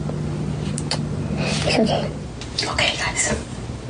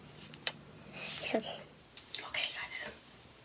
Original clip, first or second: first